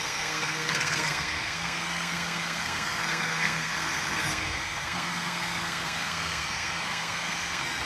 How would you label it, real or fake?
fake